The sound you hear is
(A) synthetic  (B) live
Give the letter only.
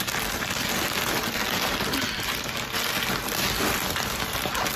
B